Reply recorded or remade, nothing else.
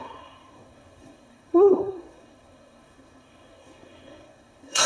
remade